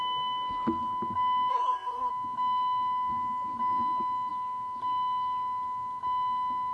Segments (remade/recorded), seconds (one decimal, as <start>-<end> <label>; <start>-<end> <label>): 0.0-1.5 recorded; 1.5-2.1 remade; 2.1-6.7 recorded